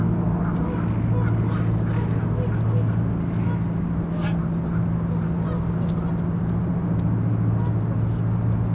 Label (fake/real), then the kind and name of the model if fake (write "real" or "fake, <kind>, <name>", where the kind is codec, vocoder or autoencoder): real